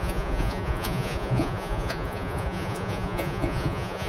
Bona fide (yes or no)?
no